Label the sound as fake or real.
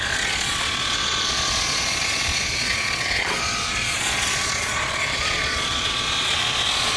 fake